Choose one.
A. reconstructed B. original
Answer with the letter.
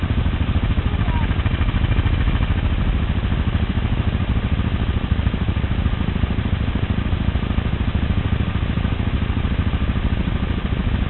B